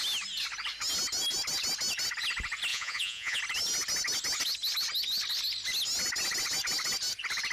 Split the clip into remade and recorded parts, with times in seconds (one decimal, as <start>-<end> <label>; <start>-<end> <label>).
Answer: 0.0-2.7 recorded; 2.7-3.4 remade; 3.4-7.5 recorded